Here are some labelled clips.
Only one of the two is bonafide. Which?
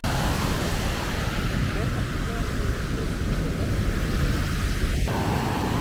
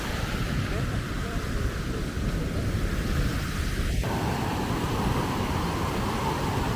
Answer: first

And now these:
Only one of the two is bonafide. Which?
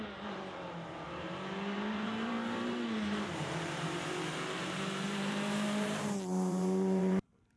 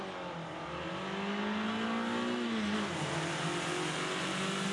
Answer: second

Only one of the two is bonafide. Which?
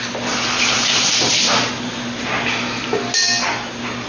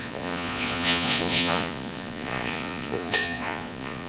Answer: first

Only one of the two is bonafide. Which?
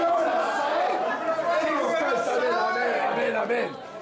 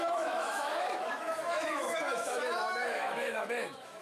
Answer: first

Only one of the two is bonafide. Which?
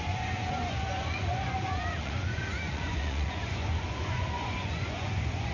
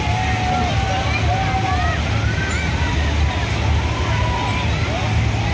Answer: second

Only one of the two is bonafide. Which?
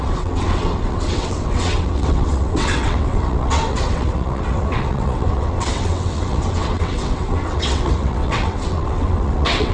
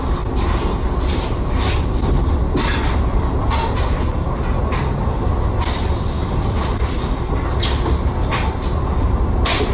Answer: second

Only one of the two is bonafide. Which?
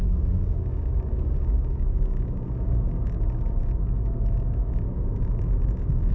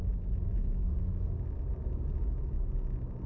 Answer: second